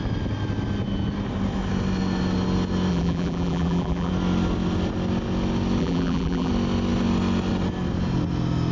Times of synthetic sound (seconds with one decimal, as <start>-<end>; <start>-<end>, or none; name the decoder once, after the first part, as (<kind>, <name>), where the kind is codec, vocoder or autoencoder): 2.9-4.1 (vocoder, BigVGAN v2); 5.8-6.5